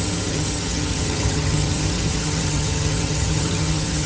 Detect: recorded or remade remade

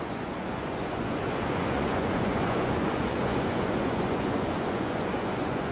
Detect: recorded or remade remade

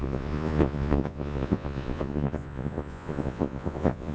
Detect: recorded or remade remade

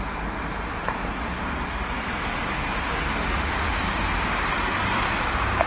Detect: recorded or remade recorded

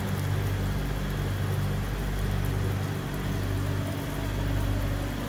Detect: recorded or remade recorded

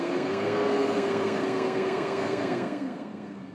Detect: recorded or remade remade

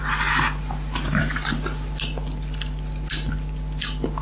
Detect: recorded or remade recorded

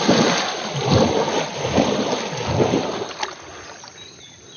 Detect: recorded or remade recorded